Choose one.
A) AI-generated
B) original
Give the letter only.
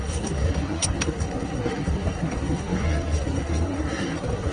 A